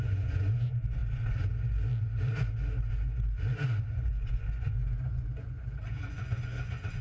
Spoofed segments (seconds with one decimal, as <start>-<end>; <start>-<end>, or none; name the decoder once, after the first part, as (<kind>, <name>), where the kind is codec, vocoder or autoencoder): 0.0-1.0 (vocoder, Vocos); 3.9-7.0